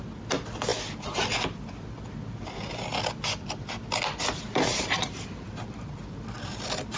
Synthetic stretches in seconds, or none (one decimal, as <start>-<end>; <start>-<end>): 4.7-5.9